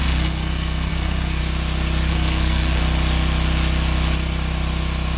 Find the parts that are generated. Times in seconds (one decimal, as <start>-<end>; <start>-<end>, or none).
0.0-1.4; 2.1-2.8